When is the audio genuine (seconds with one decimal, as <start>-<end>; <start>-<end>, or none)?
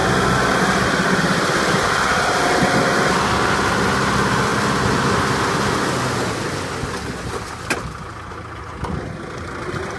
0.0-10.0